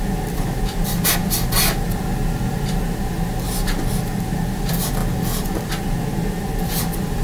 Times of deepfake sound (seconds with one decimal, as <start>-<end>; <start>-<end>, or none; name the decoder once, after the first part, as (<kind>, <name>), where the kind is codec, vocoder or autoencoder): none